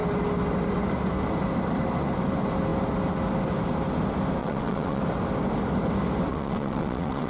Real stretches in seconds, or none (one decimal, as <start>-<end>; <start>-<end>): 0.0-4.4; 5.0-6.3